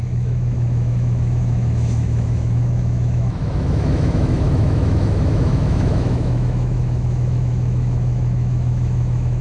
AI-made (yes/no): yes